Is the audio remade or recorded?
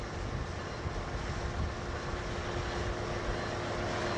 recorded